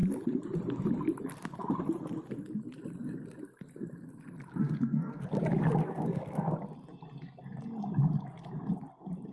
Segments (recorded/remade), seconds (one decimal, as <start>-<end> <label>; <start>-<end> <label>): 0.0-4.6 recorded; 4.6-5.2 remade; 5.2-5.8 recorded; 5.8-6.5 remade; 6.5-9.3 recorded